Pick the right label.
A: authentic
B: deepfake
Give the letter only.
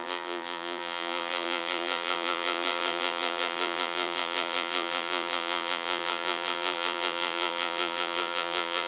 B